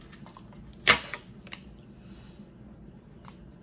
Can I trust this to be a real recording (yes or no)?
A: yes